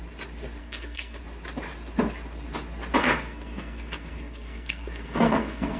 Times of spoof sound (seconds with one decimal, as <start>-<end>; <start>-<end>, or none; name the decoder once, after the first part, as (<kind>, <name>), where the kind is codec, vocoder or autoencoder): 0.6-1.2 (codec, SNAC); 3.0-5.8